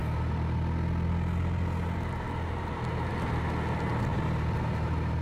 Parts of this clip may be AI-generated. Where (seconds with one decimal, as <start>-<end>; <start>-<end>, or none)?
4.1-4.6

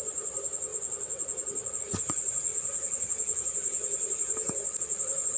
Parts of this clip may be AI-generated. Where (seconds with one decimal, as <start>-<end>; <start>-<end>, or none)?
0.0-0.7; 1.8-2.5

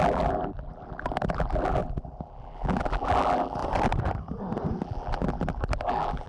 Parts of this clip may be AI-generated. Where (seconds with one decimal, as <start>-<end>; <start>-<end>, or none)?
0.0-3.6; 4.8-6.3

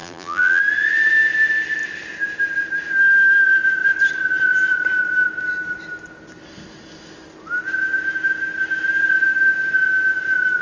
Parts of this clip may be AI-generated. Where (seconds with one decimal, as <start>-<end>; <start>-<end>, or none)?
0.0-0.6

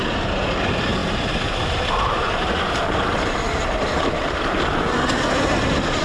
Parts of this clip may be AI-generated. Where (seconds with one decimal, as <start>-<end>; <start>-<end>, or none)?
1.0-4.6

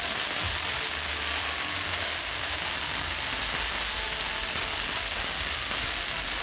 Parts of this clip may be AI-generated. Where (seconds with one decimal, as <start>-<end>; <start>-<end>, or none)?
none

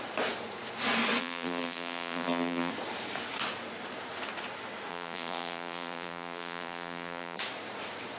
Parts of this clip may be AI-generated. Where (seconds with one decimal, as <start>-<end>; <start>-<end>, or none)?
1.2-2.7; 4.9-7.4